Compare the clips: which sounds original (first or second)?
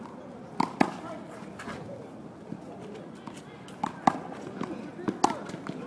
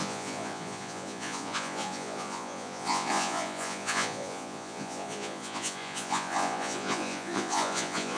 first